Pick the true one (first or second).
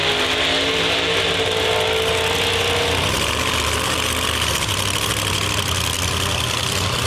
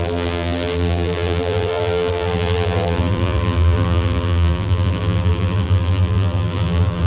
first